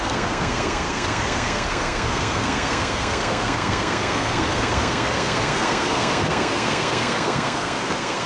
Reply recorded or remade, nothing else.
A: remade